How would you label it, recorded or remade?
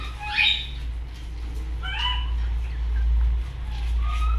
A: recorded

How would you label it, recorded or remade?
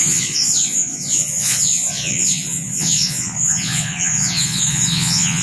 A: remade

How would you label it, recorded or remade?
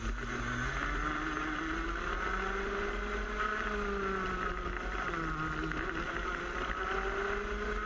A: recorded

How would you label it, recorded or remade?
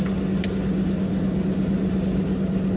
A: recorded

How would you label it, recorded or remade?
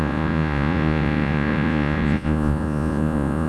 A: remade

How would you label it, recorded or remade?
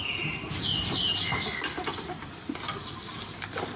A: recorded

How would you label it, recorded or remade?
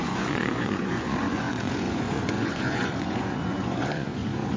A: remade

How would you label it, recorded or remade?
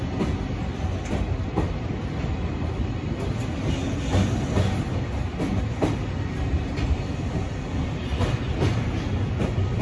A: recorded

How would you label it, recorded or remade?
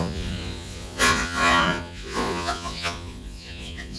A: remade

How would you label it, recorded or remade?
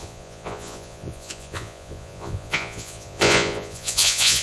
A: remade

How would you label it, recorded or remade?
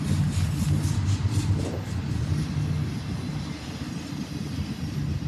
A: recorded